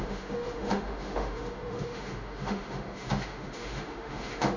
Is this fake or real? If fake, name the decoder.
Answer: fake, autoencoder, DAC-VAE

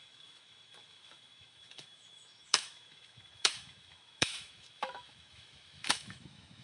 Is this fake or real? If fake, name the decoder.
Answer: fake, autoencoder, DAC-VAE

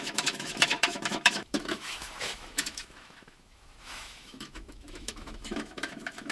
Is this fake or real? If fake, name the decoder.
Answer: fake, autoencoder, DAC-VAE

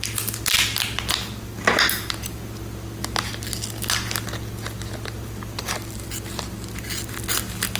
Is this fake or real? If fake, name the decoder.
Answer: real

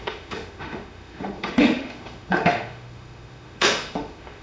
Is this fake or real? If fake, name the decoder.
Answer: fake, autoencoder, DAC-VAE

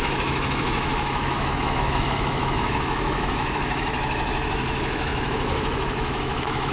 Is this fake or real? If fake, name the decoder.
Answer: fake, autoencoder, DAC-VAE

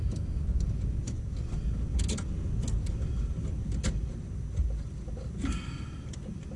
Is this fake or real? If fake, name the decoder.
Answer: real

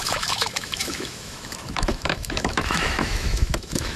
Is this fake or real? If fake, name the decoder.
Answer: fake, autoencoder, DAC-VAE